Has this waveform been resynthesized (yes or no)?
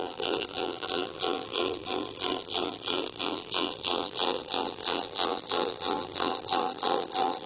yes